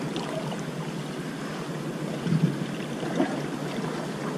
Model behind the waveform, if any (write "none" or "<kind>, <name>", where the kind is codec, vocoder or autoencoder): none